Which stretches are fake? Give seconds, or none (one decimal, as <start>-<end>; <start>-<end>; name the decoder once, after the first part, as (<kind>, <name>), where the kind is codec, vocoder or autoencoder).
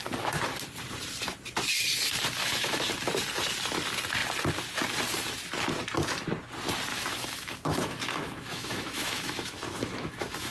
2.4-2.9 (autoencoder, DAC-VAE); 6.9-10.5